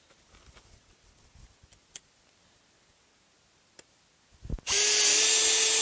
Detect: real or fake real